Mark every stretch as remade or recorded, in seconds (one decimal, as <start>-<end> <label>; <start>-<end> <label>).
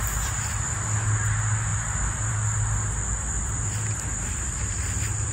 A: 0.0-5.3 recorded